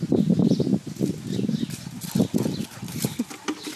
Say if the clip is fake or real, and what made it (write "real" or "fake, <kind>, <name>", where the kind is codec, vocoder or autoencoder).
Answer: real